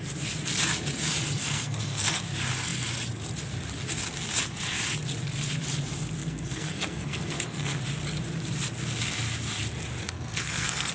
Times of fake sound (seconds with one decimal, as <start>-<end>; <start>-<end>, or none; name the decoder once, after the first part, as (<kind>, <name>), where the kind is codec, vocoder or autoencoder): 1.4-2.2 (codec, SNAC); 6.2-7.8; 10.0-10.9